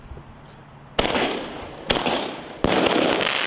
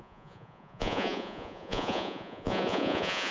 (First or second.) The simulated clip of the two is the second